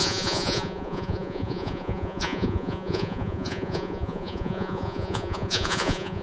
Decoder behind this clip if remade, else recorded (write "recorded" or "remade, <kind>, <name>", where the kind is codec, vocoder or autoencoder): remade, vocoder, Vocos